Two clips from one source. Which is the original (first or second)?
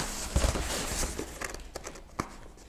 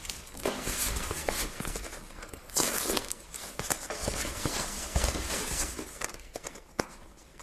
first